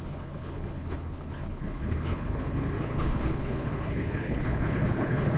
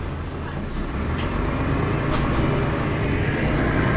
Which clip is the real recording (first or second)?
second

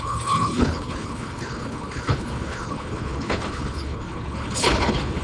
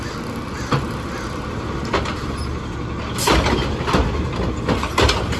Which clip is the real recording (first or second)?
second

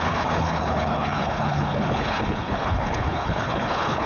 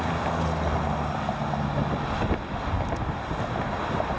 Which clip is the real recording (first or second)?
second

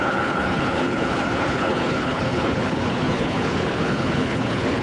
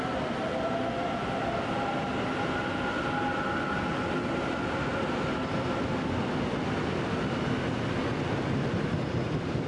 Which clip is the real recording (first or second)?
second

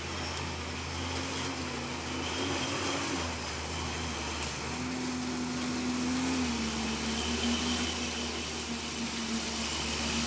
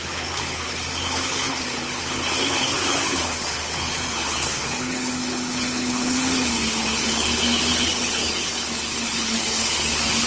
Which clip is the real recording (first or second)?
first